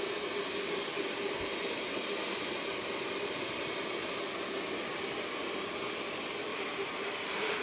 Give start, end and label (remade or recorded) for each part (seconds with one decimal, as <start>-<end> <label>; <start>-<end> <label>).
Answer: 0.0-6.5 recorded; 6.5-7.6 remade